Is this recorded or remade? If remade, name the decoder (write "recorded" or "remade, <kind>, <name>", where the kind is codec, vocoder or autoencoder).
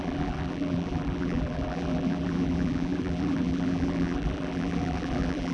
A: remade, vocoder, BigVGAN v2